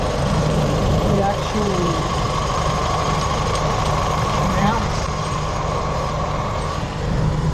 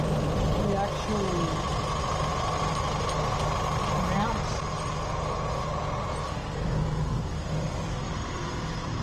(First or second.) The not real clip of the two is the first